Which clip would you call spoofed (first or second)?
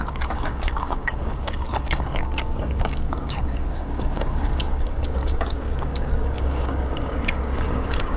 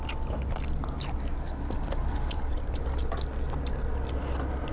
first